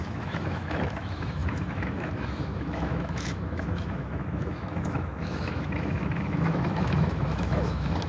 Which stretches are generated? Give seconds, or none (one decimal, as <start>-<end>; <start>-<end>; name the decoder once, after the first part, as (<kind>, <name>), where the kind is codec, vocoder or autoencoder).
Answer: 0.0-8.1 (autoencoder, DAC-VAE)